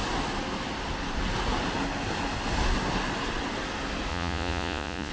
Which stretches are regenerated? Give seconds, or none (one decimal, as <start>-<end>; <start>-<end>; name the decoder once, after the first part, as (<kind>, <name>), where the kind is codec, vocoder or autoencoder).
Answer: 4.1-5.1 (vocoder, Vocos)